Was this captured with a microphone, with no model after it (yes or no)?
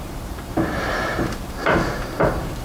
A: no